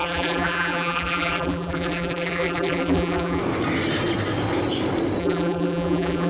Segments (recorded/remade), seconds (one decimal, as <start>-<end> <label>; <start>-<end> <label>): 0.0-3.4 remade; 3.4-5.2 recorded; 5.2-6.3 remade